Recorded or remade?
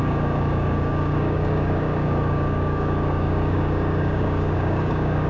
remade